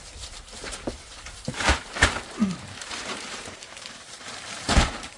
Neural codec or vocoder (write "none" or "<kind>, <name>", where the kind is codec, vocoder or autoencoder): vocoder, BigVGAN v2